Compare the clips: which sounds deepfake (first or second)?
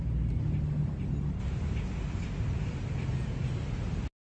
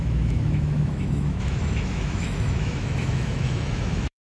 second